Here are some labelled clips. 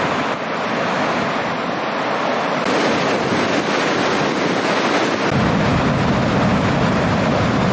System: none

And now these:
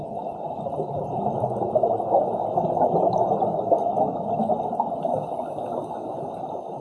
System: none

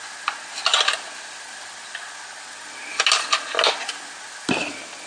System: none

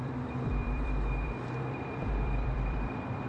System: vocoder, BigVGAN v2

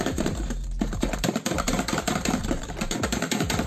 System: vocoder, BigVGAN v2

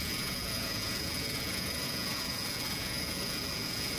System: vocoder, Vocos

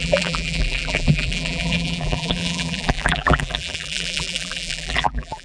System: vocoder, BigVGAN v2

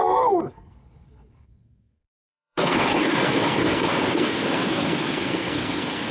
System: codec, SNAC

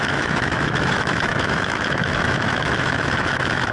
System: autoencoder, DAC-VAE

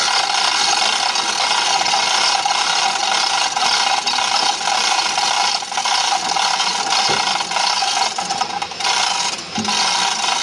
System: none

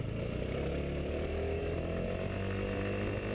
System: none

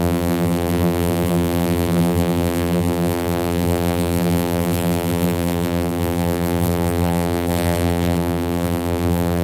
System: vocoder, BigVGAN v2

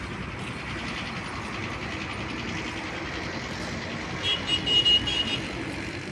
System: none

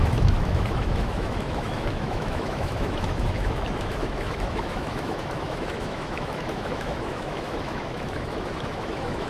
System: autoencoder, DAC-VAE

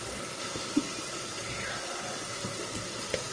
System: none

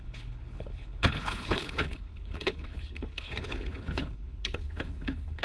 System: codec, HILCodec